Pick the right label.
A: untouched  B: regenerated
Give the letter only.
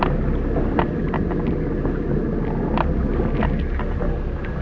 A